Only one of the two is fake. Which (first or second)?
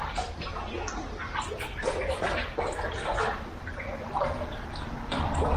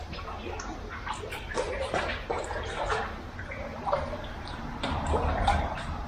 second